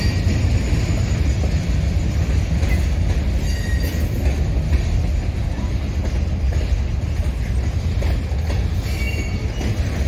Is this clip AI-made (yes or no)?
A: no